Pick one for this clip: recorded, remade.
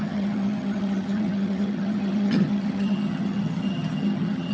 remade